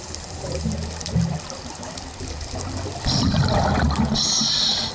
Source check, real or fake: real